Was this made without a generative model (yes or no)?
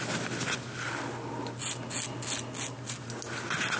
yes